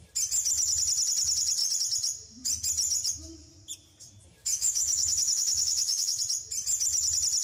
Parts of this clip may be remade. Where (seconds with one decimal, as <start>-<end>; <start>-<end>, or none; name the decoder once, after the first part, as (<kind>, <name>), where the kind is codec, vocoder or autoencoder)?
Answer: 4.4-6.2 (autoencoder, DAC-VAE)